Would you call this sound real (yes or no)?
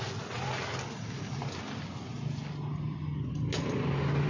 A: yes